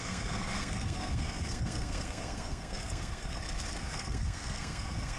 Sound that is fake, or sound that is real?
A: fake